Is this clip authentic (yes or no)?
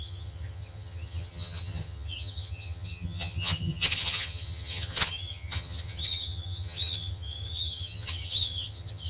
no